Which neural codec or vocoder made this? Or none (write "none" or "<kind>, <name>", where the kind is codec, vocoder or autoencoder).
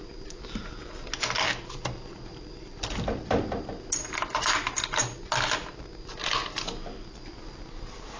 none